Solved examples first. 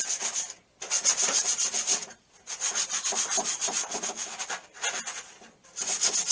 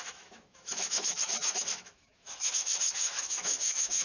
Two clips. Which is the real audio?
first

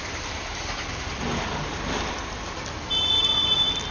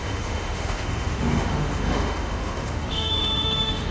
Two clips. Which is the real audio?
first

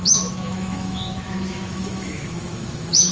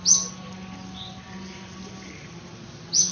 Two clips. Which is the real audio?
second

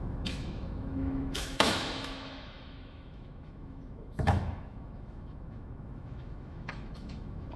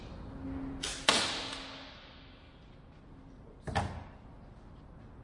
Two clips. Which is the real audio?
second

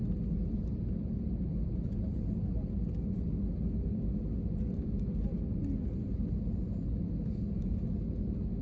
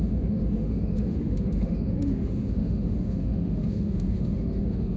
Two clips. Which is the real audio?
first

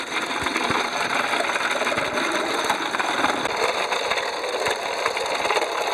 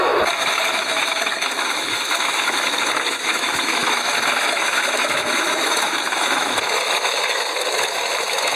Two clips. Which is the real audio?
first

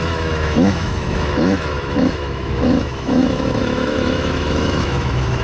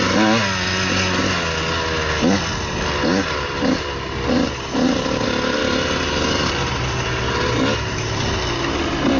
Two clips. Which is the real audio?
second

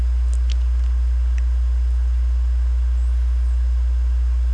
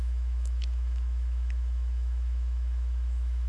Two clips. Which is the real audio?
first